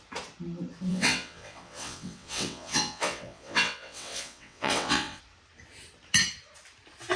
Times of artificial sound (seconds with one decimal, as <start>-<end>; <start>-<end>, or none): 0.9-5.2